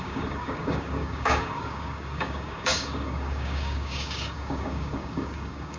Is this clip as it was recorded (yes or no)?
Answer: no